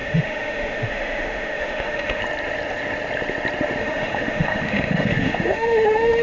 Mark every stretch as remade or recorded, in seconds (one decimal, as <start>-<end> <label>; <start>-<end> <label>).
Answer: 0.0-2.2 remade; 2.2-3.8 recorded; 3.8-6.2 remade